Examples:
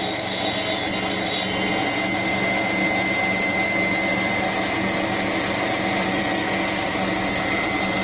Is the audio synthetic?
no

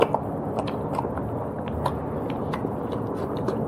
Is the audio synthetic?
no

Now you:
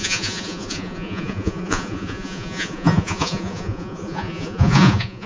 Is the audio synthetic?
yes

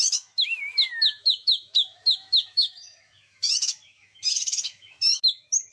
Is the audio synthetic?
yes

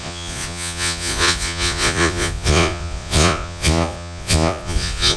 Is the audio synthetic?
yes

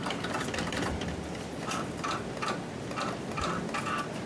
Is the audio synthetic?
yes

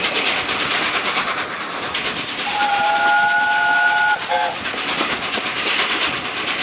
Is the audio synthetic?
no